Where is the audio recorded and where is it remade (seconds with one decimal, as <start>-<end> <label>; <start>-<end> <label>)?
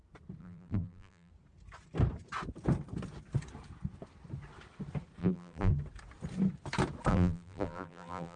0.0-0.4 recorded; 0.4-1.3 remade; 1.3-5.2 recorded; 5.2-5.7 remade; 5.7-7.1 recorded; 7.1-8.4 remade